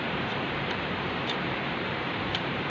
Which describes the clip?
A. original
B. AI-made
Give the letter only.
B